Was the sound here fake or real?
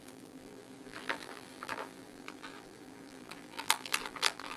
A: fake